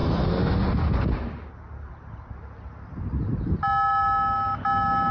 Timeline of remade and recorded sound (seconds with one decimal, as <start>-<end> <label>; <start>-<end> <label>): 0.0-5.1 recorded